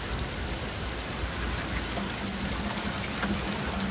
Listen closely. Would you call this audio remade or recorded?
recorded